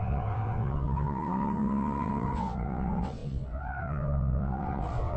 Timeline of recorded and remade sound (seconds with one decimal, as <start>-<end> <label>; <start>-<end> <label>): 0.0-5.2 remade